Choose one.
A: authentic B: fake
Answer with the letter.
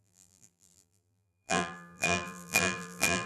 B